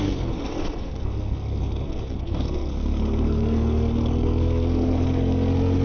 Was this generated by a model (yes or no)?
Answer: yes